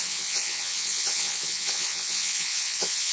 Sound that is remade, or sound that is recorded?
remade